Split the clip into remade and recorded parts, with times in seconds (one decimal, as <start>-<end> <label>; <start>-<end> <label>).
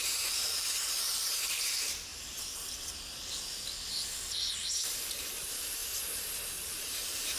0.0-2.1 remade; 2.1-5.1 recorded; 5.1-5.8 remade; 5.8-6.6 recorded; 6.6-7.4 remade